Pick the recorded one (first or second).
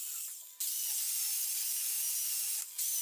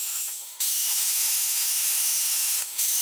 first